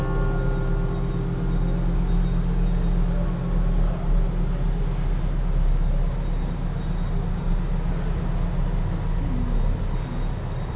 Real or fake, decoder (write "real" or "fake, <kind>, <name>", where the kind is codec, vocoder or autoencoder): real